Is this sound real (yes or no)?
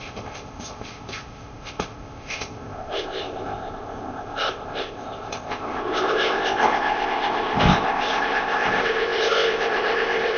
no